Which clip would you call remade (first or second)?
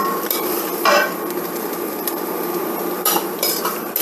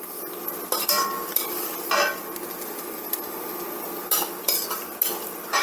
first